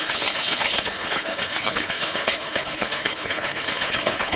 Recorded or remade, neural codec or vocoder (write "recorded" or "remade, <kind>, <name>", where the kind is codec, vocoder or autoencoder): remade, codec, HILCodec